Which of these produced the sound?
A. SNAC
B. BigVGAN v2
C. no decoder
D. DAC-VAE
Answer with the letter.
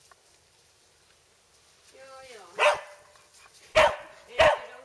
C